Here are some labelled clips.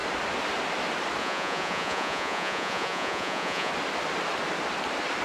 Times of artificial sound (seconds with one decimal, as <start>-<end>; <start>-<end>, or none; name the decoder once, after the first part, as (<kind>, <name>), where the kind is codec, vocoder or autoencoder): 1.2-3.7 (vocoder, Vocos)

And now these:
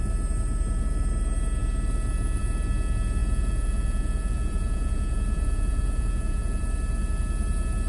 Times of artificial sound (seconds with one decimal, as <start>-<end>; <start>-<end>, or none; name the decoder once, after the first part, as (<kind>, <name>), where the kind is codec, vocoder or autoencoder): 3.2-6.6 (vocoder, Vocos)

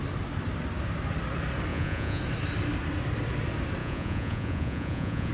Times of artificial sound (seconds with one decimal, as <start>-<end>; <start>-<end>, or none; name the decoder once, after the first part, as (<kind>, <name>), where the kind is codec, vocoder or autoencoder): 1.7-2.2 (vocoder, Vocos); 3.8-5.3

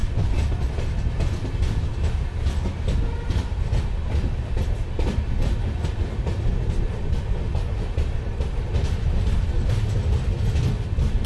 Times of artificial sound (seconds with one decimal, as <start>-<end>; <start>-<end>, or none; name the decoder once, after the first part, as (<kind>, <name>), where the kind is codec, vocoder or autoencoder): none

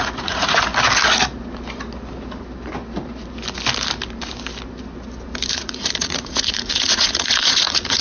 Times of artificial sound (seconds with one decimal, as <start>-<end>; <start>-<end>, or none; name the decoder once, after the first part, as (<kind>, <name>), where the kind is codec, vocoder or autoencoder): 0.0-0.7 (vocoder, Vocos); 5.5-8.0

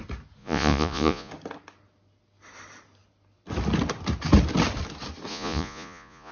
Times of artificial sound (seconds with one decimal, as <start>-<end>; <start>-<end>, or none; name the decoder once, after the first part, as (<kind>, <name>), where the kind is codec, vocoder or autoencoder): 0.4-1.3 (vocoder, Vocos); 5.3-6.3

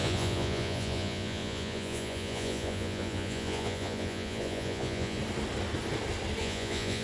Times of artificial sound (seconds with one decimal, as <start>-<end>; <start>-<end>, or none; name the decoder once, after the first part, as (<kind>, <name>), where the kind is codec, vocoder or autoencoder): 0.0-5.2 (vocoder, Vocos); 6.4-7.0

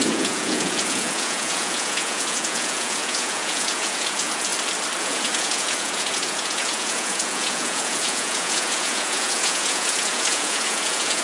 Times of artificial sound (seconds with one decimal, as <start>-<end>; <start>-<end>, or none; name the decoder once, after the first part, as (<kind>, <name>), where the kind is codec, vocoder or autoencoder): 0.0-4.5 (vocoder, Vocos); 5.0-11.2